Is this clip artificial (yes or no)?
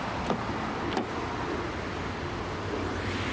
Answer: no